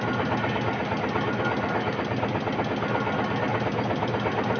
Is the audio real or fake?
real